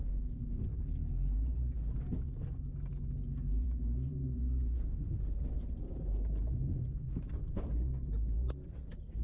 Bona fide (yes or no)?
no